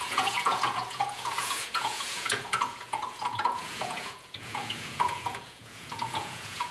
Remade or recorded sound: remade